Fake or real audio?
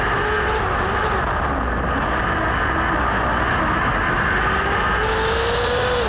real